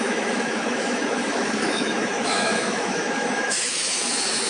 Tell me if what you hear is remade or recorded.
remade